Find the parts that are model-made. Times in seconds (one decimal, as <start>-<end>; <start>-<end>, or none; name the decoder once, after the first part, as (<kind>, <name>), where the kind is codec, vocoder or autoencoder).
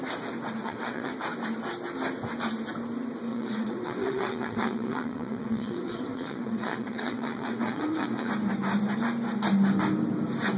0.6-1.1 (vocoder, WaveNeXt); 3.3-8.3